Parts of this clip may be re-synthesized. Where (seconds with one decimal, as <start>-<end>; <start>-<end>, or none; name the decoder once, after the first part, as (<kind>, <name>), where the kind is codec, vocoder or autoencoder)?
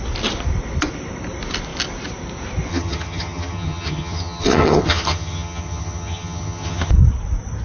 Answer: 2.7-6.9 (vocoder, HiFi-GAN)